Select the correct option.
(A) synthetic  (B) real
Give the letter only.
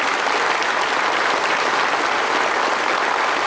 B